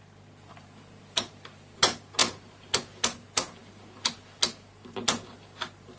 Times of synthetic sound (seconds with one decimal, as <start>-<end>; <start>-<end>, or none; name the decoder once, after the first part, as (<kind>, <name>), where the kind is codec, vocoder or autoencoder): none